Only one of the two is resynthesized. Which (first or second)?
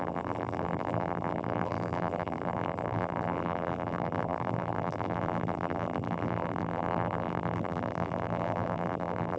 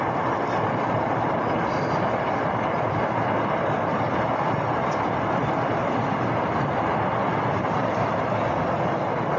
first